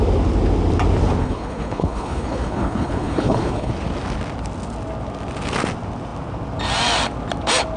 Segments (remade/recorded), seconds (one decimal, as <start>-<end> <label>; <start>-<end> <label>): 0.0-1.2 recorded; 1.2-3.7 remade; 3.7-7.8 recorded